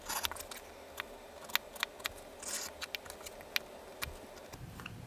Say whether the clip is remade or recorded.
recorded